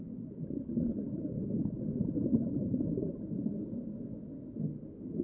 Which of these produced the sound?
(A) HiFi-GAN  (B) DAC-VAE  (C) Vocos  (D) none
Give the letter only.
D